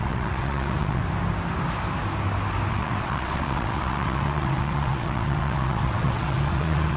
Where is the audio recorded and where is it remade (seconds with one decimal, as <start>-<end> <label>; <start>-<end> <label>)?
0.0-1.0 remade; 1.0-2.7 recorded; 2.7-7.0 remade